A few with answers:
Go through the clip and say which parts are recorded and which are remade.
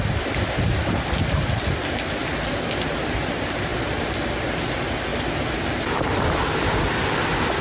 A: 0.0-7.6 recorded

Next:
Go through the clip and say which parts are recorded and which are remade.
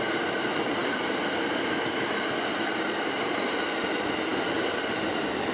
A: 0.0-0.8 remade; 0.8-1.3 recorded; 1.3-4.3 remade; 4.3-5.1 recorded; 5.1-5.5 remade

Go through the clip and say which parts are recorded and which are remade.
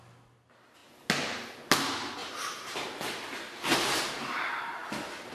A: 0.0-2.2 recorded; 2.2-3.0 remade; 3.0-3.7 recorded; 3.7-4.8 remade; 4.8-5.3 recorded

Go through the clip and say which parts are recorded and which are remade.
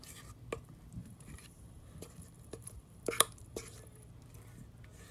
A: 0.0-1.0 recorded; 1.0-4.1 remade; 4.1-5.1 recorded